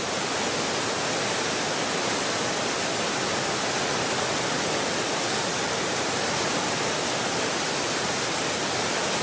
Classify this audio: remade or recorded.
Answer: recorded